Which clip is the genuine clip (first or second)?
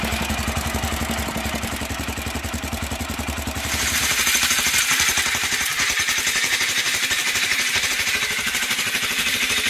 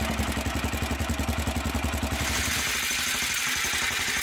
second